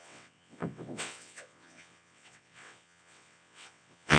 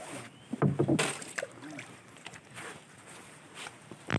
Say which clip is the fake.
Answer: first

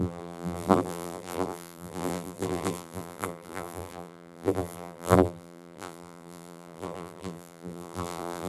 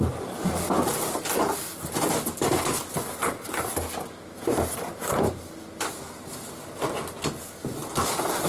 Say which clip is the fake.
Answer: first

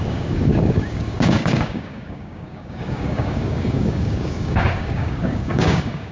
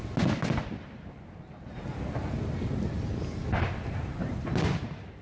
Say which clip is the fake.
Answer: first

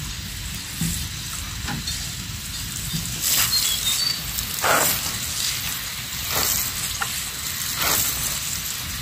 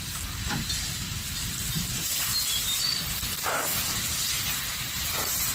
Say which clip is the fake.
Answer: second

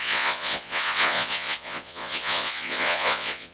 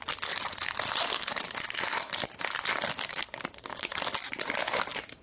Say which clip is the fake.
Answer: first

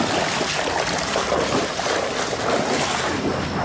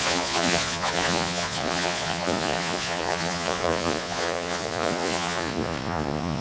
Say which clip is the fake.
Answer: second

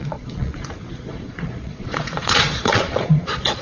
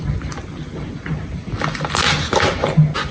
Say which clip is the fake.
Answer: first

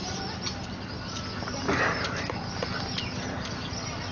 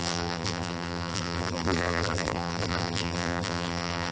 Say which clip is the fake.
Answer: second